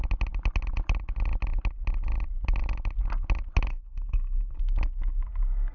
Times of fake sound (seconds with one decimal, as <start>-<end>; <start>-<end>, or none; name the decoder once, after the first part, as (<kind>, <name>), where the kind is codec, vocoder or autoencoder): 3.7-4.6 (codec, SNAC)